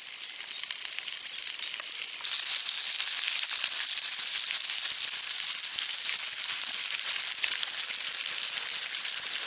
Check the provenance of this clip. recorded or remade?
recorded